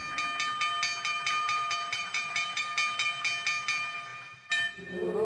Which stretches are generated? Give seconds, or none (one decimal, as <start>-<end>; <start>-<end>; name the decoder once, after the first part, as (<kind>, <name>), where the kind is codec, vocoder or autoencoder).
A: 1.3-2.6 (vocoder, BigVGAN v2)